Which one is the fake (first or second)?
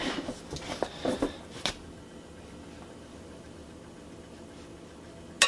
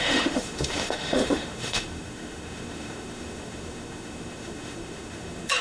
second